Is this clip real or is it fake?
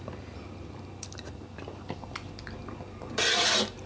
fake